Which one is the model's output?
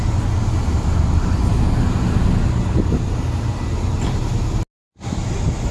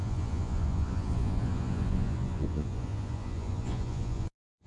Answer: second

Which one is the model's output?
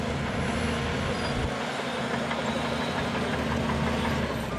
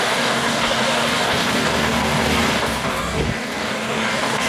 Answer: second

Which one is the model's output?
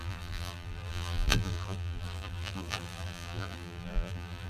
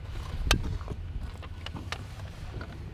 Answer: first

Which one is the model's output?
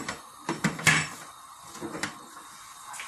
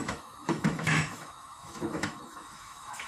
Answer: second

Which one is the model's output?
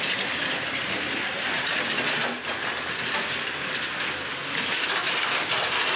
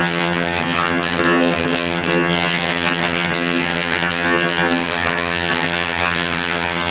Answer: second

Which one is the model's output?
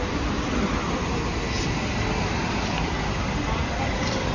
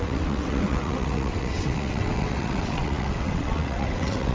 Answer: second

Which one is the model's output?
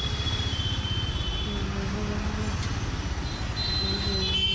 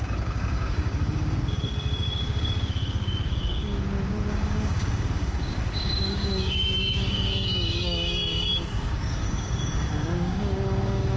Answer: second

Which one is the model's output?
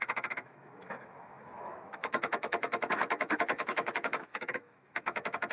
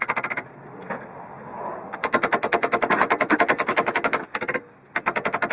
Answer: first